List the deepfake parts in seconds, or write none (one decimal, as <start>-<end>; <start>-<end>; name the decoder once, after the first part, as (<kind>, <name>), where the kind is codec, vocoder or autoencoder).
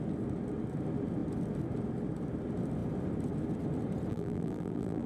4.1-5.1 (vocoder, BigVGAN v2)